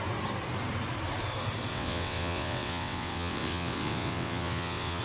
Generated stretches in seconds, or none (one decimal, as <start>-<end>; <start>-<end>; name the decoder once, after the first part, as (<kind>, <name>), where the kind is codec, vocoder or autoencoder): 1.7-5.0 (vocoder, WaveNeXt)